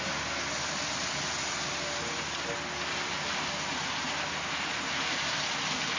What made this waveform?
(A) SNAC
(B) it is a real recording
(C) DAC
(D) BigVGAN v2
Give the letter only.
B